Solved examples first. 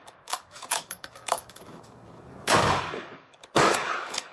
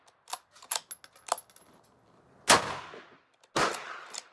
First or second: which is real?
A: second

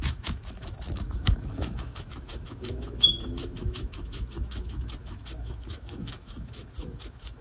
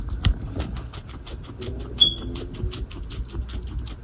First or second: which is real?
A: second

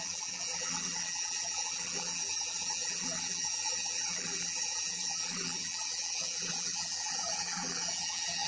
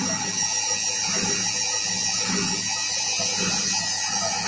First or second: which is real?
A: second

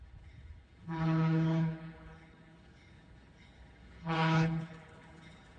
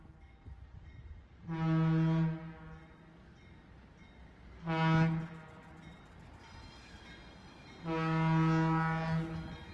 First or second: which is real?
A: second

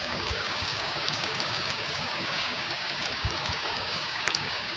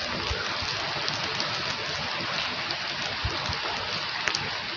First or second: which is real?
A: second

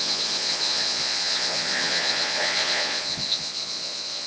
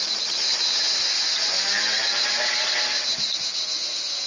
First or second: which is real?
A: second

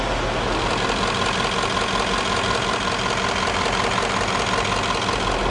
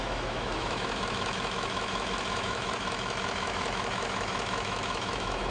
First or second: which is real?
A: first